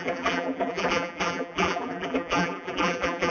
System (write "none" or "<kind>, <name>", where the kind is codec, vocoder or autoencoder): vocoder, BigVGAN v2